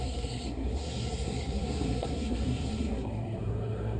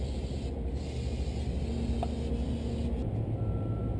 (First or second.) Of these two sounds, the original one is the second